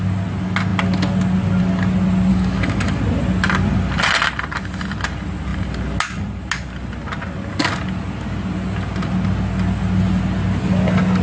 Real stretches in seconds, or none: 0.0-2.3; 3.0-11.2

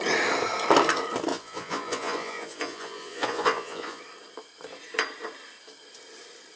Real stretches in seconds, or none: 0.0-1.3; 4.0-6.6

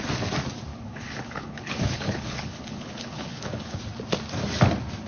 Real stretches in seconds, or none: 0.0-0.7; 3.8-5.1

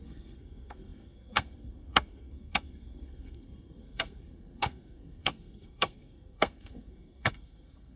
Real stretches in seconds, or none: none

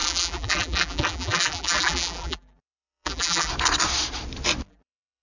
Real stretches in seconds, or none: 3.5-4.7

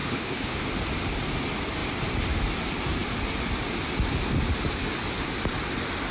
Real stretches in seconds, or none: 0.6-6.1

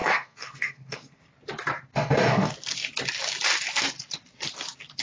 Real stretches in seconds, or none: 1.2-1.9; 2.5-5.0